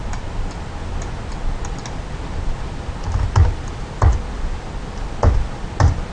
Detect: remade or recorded recorded